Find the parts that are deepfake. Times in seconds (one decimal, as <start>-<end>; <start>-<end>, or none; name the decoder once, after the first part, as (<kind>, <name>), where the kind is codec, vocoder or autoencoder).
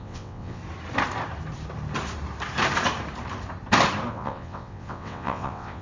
0.0-0.6 (vocoder, WaveNeXt); 4.1-5.8